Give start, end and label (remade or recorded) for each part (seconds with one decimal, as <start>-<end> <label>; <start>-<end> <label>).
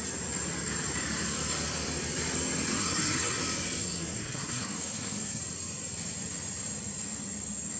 0.0-2.8 recorded; 2.8-3.4 remade; 3.4-3.8 recorded; 3.8-5.4 remade; 5.4-7.8 recorded